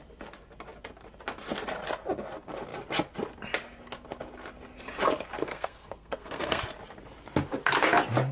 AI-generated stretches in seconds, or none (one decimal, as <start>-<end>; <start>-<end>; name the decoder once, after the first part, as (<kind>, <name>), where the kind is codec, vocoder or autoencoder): 5.4-6.6 (codec, SNAC)